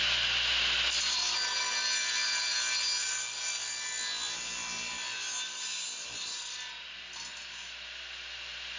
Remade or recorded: recorded